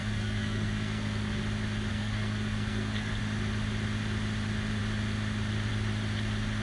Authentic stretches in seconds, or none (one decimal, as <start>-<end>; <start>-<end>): 1.4-1.9; 3.2-6.6